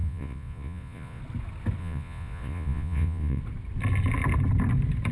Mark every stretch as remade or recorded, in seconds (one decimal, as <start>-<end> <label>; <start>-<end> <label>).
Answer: 0.0-1.2 remade; 1.2-1.8 recorded; 1.8-3.4 remade; 3.4-5.1 recorded